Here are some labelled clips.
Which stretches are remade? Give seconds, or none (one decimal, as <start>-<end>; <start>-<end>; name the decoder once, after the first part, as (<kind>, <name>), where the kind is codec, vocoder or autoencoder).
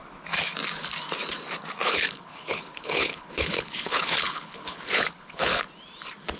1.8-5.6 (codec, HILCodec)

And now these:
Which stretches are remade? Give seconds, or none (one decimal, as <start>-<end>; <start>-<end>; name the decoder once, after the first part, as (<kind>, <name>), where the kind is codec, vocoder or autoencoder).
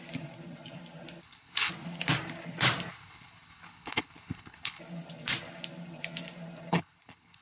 1.2-1.7 (codec, HILCodec); 2.9-4.8; 6.7-7.4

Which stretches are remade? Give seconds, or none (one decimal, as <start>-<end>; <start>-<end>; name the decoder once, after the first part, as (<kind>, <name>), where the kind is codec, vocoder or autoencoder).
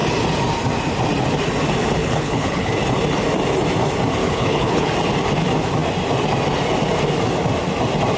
2.0-2.7 (codec, HILCodec); 4.2-4.9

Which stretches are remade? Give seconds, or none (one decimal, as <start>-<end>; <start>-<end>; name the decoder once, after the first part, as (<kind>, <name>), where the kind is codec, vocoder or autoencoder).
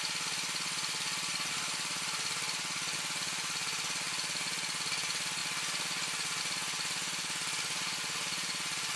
none